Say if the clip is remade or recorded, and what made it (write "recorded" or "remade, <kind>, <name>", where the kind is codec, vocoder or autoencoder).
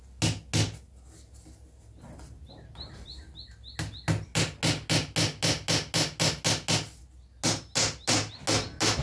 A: recorded